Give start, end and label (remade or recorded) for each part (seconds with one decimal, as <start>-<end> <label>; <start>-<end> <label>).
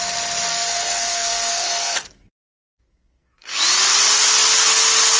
0.0-0.5 recorded; 0.5-3.6 remade; 3.6-5.2 recorded